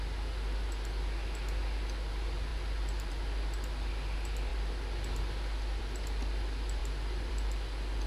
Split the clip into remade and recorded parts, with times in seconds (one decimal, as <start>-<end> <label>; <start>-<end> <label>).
0.0-8.1 recorded